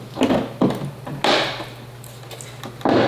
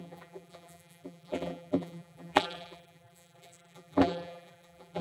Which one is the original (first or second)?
first